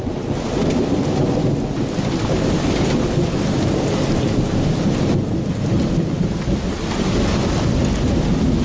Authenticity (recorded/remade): recorded